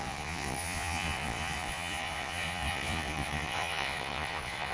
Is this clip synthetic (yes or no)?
yes